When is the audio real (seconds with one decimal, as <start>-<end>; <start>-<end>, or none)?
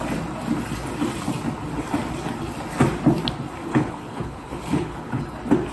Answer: 0.0-3.7; 5.2-5.7